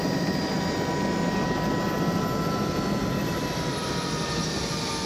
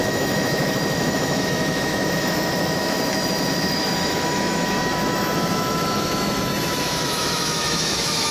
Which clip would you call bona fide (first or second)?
first